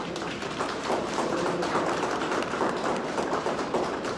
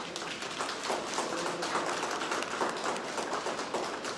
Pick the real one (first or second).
second